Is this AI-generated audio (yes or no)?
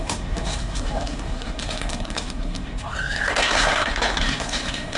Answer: yes